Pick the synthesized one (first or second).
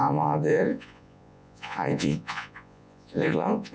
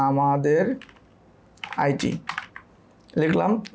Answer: first